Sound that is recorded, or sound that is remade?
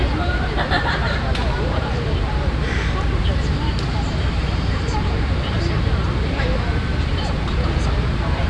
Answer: remade